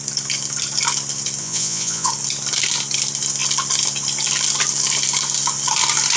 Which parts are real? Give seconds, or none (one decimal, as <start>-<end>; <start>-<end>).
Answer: 0.0-1.4; 2.1-6.2